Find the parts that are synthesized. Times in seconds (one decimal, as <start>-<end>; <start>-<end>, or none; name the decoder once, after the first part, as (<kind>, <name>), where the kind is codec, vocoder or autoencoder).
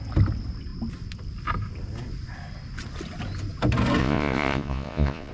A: 4.0-5.3 (vocoder, Vocos)